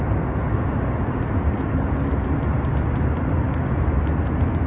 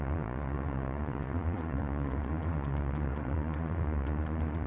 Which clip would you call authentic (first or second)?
first